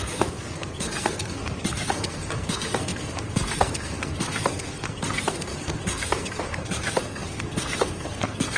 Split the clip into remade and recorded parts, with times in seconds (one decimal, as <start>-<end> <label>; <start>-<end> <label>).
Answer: 0.0-8.6 remade